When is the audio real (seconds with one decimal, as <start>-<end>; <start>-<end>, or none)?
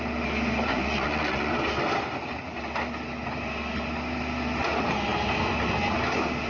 0.0-0.7; 1.5-6.5